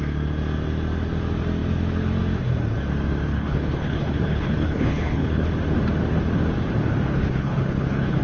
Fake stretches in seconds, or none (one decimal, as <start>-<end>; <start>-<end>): 3.3-5.5; 7.1-8.2